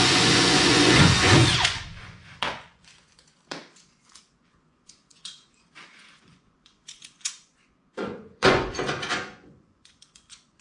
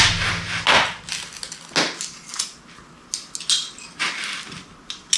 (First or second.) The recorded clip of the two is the second